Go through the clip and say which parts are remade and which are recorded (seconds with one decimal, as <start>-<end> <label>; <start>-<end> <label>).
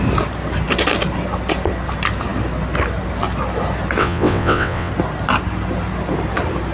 0.0-4.0 recorded; 4.0-4.9 remade; 4.9-6.7 recorded